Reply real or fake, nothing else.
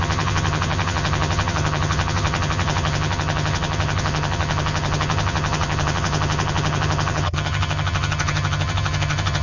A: fake